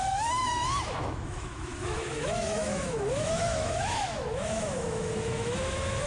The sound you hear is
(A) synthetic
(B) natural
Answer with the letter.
A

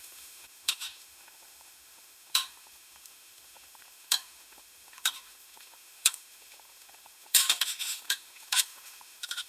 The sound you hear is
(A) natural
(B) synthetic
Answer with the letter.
B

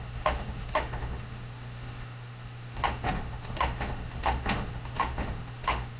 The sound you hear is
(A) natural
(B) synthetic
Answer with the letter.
B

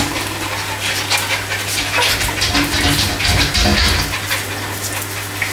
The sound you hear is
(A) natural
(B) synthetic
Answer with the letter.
A